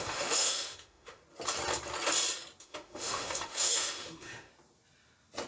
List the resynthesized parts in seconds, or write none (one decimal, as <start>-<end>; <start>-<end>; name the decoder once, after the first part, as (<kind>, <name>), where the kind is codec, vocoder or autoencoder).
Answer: 0.0-1.2 (autoencoder, DAC-VAE); 2.6-4.5